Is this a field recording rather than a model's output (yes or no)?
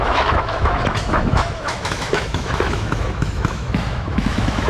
no